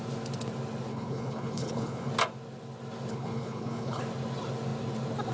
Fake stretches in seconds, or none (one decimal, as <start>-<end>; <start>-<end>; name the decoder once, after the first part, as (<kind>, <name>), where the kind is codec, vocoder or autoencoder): 0.9-2.1 (codec, HILCodec); 3.1-4.0